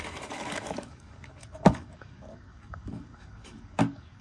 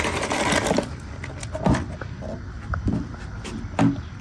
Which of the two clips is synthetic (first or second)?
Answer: first